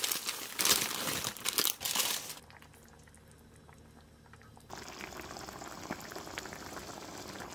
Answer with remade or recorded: recorded